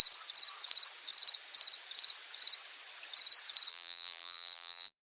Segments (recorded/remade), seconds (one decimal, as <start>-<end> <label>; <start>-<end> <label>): 0.0-3.7 recorded; 3.7-5.0 remade